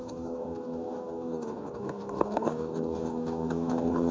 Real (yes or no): no